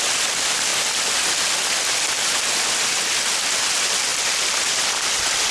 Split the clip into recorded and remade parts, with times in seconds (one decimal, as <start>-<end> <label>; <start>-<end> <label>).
0.0-5.5 recorded